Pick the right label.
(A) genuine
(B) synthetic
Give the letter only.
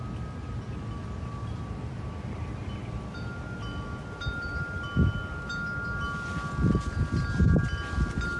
A